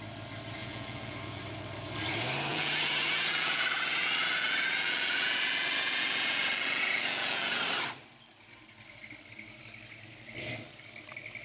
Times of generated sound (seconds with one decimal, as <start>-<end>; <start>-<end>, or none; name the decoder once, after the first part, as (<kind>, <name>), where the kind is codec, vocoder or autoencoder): 0.6-1.4 (vocoder, Vocos); 2.5-7.6